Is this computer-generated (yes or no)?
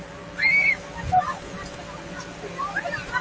yes